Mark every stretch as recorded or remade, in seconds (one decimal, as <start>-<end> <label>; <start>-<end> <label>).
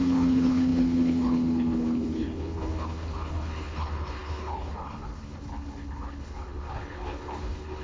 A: 0.0-7.8 remade